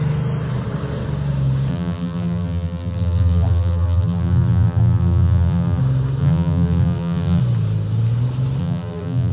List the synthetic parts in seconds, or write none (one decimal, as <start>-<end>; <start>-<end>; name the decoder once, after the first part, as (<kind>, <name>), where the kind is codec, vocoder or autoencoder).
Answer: 1.7-5.8 (vocoder, BigVGAN v2); 6.2-7.4; 8.6-9.3